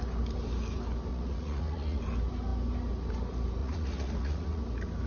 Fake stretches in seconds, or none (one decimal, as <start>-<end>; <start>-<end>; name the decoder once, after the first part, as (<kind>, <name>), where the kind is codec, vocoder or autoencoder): 1.1-2.0 (vocoder, Vocos); 3.6-4.6